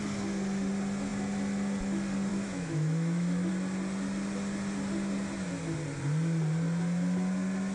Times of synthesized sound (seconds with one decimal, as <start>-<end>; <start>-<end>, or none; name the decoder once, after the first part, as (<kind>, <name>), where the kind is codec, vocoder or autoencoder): 2.3-3.5 (autoencoder, DAC-VAE)